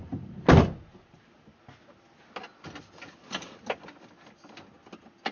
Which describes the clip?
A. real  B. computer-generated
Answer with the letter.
A